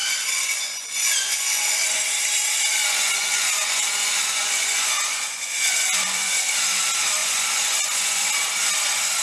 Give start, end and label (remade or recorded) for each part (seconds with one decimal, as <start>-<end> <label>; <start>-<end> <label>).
0.0-2.0 remade; 2.0-2.8 recorded; 2.8-6.4 remade; 6.4-7.2 recorded; 7.2-8.3 remade; 8.3-9.2 recorded